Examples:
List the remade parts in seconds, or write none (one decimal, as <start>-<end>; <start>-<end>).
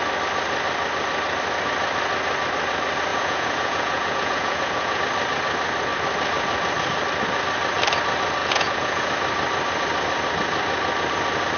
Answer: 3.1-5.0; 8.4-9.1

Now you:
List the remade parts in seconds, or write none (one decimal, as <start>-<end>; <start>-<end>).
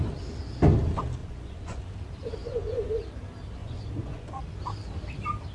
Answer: 1.2-1.8; 2.4-3.0; 3.6-4.3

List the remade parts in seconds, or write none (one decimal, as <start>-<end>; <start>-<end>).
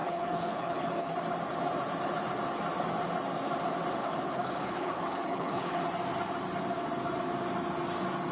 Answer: 0.0-1.1; 4.0-5.8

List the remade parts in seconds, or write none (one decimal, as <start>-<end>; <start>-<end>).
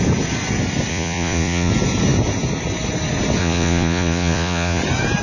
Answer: 0.9-1.7; 3.4-4.8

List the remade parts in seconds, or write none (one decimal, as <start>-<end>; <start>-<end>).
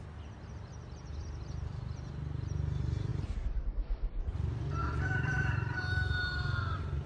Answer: 1.1-2.1; 4.8-5.4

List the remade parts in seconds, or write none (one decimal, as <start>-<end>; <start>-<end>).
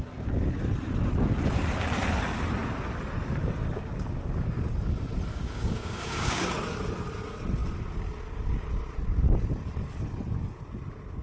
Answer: 5.3-6.5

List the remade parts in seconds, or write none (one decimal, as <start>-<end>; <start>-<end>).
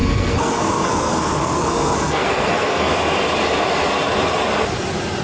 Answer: 0.0-2.9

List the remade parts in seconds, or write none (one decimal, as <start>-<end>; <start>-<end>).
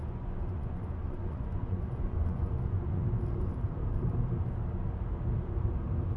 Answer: 0.0-3.0